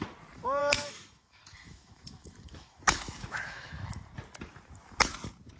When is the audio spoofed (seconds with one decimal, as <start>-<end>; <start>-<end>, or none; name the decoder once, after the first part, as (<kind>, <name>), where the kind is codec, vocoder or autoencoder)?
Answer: 0.6-4.0 (autoencoder, DAC-VAE)